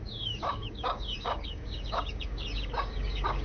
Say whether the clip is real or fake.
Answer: fake